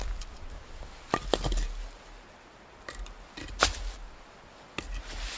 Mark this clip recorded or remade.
recorded